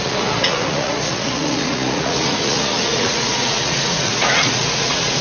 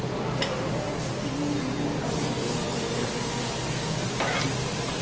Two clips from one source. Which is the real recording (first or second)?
second